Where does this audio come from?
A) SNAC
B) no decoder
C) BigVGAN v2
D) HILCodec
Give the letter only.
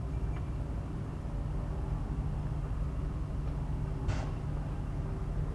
B